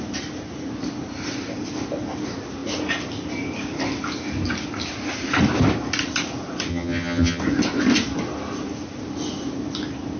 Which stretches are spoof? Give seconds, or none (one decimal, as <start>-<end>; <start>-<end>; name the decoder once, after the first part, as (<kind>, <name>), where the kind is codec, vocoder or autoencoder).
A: 6.7-7.4 (vocoder, HiFi-GAN)